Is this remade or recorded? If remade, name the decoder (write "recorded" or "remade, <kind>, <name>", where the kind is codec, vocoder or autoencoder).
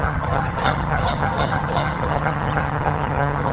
remade, vocoder, HiFi-GAN